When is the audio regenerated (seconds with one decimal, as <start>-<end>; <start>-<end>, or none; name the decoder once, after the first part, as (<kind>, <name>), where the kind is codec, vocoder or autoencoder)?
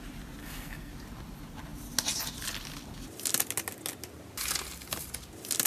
0.4-0.9 (codec, SNAC)